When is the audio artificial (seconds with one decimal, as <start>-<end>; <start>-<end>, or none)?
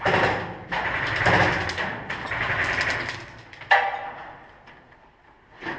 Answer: none